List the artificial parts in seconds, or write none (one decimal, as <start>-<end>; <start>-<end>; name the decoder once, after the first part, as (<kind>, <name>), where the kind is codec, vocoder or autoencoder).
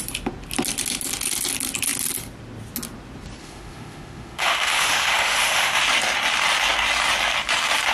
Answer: 3.4-5.8 (autoencoder, DAC-VAE)